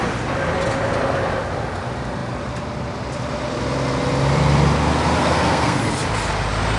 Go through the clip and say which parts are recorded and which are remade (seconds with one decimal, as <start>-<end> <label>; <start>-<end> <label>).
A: 0.0-5.2 recorded; 5.2-5.8 remade; 5.8-6.8 recorded